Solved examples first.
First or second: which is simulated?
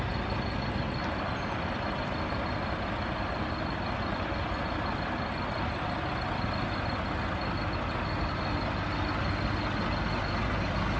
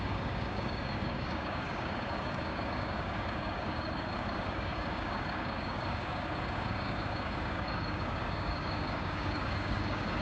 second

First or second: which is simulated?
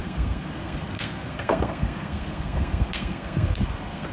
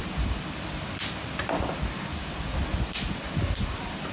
first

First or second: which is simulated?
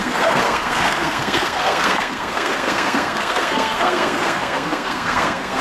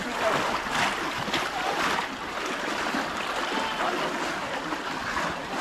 first